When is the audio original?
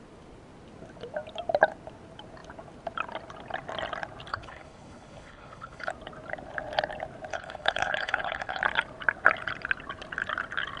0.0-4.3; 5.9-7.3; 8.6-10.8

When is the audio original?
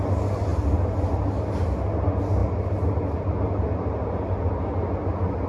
0.0-5.5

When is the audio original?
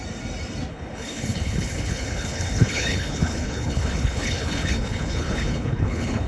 0.0-0.7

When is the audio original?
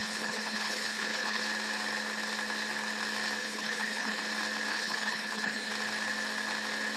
1.4-3.4; 4.2-4.7; 5.7-7.0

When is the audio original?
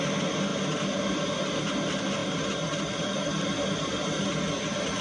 0.0-5.0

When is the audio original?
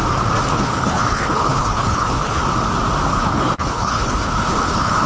0.0-0.5; 2.4-3.1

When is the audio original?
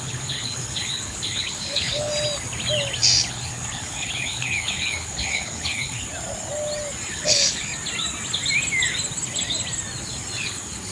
2.1-3.3; 6.1-7.1; 7.7-10.4